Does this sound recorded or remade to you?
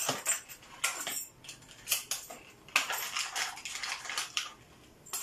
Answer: recorded